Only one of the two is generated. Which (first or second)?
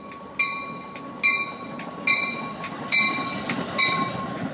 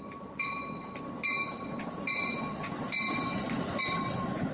second